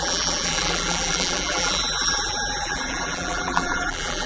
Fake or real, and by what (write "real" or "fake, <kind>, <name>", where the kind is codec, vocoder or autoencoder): fake, vocoder, BigVGAN v2